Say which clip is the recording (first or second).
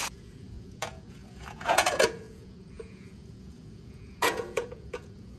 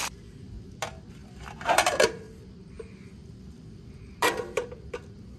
second